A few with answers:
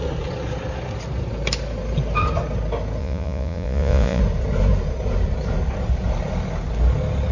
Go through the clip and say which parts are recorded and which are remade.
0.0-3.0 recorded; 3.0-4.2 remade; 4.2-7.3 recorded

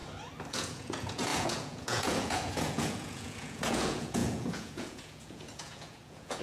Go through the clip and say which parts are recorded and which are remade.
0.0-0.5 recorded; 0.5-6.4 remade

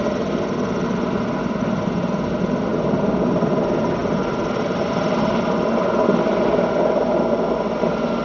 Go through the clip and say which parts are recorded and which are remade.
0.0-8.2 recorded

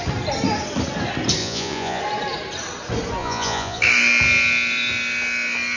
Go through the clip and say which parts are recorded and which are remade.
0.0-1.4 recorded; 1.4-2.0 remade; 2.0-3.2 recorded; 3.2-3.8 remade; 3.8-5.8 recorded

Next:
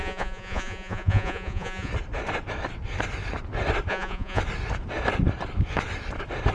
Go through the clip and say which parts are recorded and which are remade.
0.0-1.9 remade; 1.9-3.9 recorded; 3.9-4.4 remade; 4.4-6.5 recorded